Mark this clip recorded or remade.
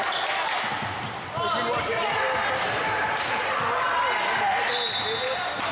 recorded